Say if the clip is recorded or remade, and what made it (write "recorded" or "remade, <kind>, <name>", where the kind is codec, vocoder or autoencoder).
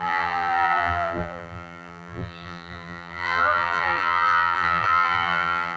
remade, vocoder, BigVGAN v2